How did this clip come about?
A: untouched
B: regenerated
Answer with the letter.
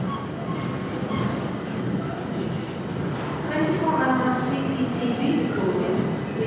A